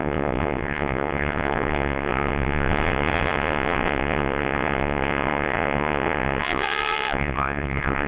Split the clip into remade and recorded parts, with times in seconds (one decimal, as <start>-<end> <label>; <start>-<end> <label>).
0.0-8.1 remade